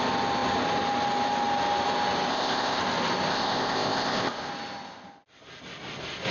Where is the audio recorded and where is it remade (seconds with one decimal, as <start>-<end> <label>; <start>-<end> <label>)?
0.0-2.3 recorded; 2.3-2.8 remade; 2.8-3.3 recorded; 3.3-4.5 remade; 4.5-6.3 recorded

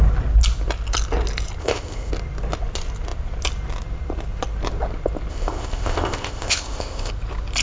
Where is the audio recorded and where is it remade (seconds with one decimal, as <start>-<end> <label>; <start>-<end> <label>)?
0.0-1.6 recorded; 1.6-2.1 remade; 2.1-5.3 recorded; 5.3-7.1 remade; 7.1-7.6 recorded

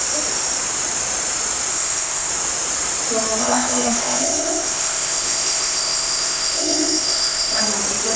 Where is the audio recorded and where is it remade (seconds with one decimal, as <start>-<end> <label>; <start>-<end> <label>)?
0.0-1.7 recorded; 1.7-2.3 remade; 2.3-3.4 recorded; 3.4-7.6 remade; 7.6-8.2 recorded

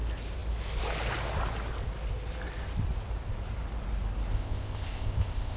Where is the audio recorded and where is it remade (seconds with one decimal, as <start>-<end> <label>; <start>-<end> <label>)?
0.0-4.3 recorded; 4.3-5.6 remade

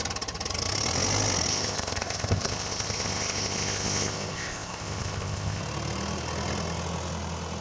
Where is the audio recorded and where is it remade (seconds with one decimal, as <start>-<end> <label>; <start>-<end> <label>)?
0.0-1.5 recorded; 1.5-5.6 remade; 5.6-7.6 recorded